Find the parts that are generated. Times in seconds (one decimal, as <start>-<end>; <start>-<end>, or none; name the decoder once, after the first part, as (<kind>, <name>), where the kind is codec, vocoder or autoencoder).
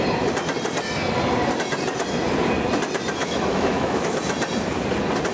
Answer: 3.2-4.2 (autoencoder, DAC-VAE)